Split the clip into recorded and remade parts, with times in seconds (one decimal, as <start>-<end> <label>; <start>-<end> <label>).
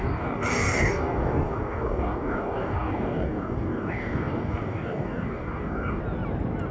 0.0-6.0 remade; 6.0-6.7 recorded